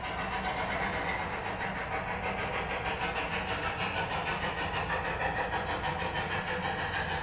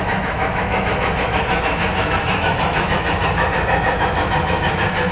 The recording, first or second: first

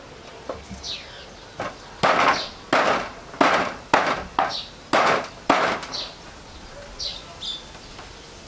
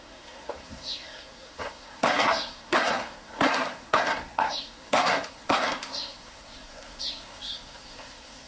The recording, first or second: first